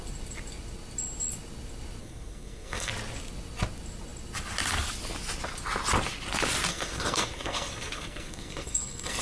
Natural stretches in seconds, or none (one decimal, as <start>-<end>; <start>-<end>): 0.0-2.0; 2.9-6.7